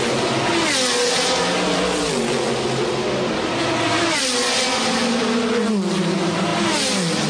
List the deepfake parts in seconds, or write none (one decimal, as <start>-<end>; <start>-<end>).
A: none